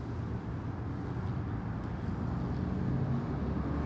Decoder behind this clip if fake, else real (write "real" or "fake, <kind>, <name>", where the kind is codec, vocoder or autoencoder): real